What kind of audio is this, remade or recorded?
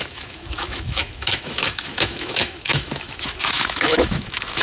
remade